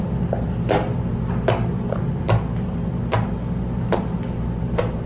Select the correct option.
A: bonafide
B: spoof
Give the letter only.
A